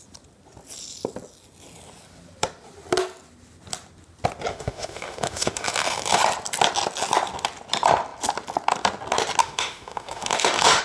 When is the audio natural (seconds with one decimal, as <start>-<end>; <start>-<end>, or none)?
0.0-4.5; 6.2-9.4